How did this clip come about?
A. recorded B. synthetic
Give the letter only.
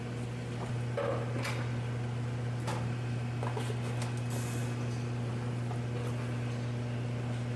A